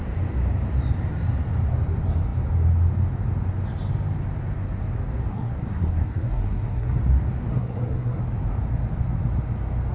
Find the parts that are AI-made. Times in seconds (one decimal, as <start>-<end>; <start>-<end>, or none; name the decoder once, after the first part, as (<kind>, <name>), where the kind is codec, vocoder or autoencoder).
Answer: 5.3-7.0 (codec, SNAC); 7.5-8.2